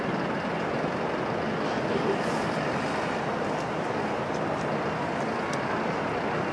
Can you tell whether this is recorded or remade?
recorded